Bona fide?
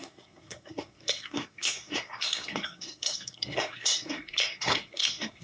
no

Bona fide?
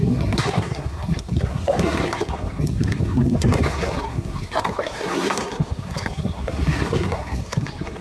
no